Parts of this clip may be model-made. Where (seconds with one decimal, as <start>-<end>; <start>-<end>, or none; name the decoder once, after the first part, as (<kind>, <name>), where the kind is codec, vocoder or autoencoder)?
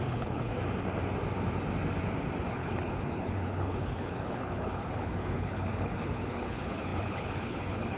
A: 0.0-0.5 (codec, HILCodec); 2.5-8.0